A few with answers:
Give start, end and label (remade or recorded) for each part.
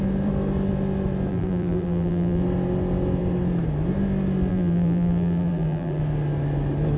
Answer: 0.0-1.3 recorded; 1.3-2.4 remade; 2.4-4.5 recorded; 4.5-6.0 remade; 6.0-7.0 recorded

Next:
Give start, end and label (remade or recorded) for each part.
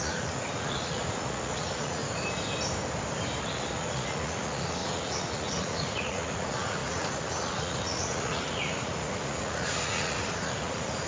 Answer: 0.0-2.0 remade; 2.0-3.4 recorded; 3.4-11.1 remade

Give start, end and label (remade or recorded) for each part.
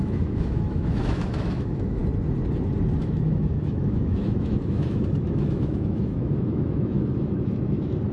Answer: 0.0-2.0 remade; 2.0-3.0 recorded; 3.0-8.1 remade